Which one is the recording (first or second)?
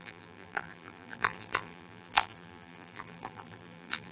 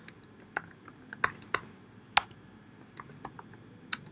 second